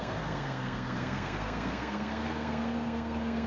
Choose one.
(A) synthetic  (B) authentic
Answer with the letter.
A